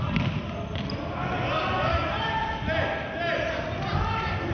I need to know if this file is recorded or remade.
recorded